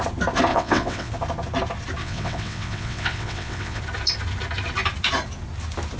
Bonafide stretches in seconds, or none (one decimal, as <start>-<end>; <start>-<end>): 0.0-0.5; 1.1-2.0; 3.8-6.0